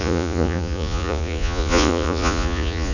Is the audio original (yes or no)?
no